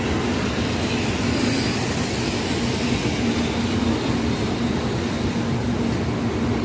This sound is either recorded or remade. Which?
recorded